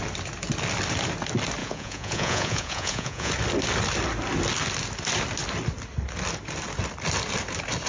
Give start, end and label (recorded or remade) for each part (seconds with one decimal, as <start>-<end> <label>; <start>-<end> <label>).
0.0-1.6 recorded; 1.6-3.3 remade; 3.3-7.9 recorded